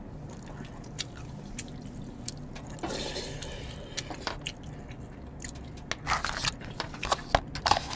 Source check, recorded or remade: recorded